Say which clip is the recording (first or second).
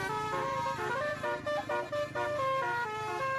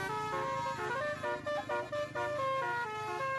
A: second